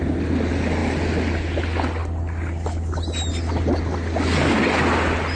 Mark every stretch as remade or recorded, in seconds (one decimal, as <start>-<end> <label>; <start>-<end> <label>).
0.0-5.4 recorded